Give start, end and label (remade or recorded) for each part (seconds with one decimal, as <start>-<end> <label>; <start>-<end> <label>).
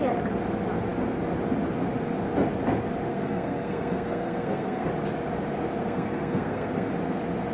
0.0-3.1 recorded; 3.1-4.9 remade; 4.9-5.8 recorded; 5.8-6.9 remade; 6.9-7.5 recorded